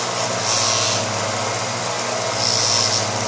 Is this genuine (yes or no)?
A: yes